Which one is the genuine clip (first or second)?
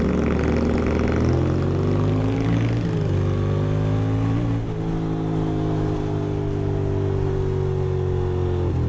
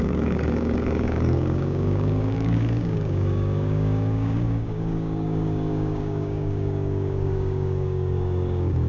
first